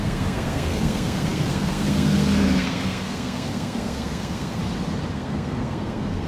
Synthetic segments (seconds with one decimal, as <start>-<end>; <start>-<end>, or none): 0.0-4.6; 5.1-6.3